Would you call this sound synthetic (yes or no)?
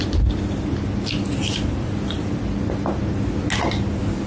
no